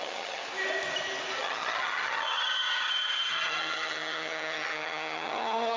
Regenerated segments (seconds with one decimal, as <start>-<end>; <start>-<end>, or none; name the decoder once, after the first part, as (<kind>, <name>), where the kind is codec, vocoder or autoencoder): 0.0-0.4 (vocoder, HiFi-GAN); 1.4-5.8